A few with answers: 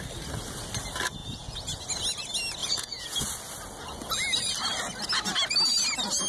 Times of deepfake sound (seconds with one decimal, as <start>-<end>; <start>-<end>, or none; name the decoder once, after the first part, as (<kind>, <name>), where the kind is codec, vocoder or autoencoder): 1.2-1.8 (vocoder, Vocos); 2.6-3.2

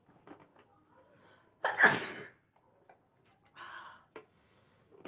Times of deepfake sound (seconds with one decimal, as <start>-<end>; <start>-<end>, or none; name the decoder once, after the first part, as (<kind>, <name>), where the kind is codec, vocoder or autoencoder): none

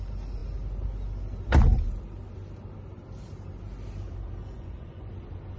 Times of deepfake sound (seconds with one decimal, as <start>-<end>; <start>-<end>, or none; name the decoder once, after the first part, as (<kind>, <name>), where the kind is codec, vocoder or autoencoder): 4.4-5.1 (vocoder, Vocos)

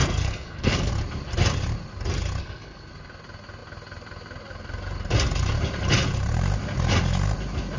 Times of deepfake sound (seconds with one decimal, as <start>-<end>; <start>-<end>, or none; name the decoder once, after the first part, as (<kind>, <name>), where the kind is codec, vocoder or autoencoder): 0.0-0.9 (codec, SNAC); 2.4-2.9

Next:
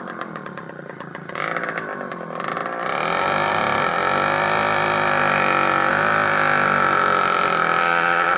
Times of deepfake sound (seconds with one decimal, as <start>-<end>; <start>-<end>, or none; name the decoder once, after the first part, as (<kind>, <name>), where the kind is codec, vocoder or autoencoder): none

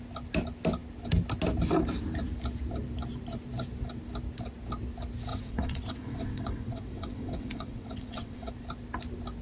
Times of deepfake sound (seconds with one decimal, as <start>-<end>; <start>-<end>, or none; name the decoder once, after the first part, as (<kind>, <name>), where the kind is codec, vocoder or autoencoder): 5.3-8.5 (vocoder, WaveNeXt)